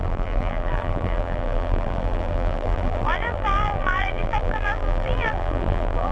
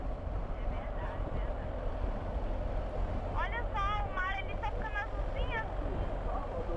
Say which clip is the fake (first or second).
first